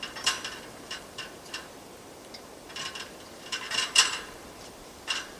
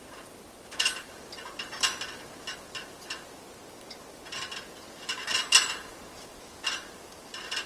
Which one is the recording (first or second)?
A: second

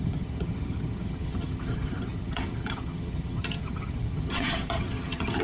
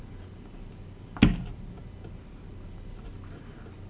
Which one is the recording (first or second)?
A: second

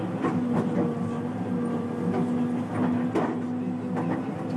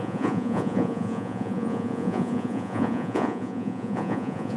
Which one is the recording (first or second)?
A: first